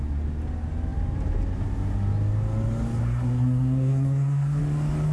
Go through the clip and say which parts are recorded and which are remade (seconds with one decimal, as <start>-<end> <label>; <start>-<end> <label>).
0.0-3.0 recorded; 3.0-4.6 remade; 4.6-5.1 recorded